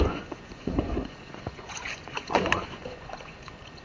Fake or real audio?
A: fake